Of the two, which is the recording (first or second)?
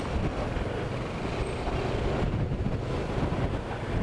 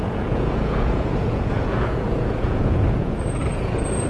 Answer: first